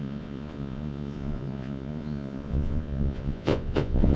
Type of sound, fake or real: fake